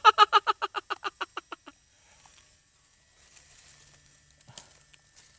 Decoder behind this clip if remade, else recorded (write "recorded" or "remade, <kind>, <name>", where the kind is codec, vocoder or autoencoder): recorded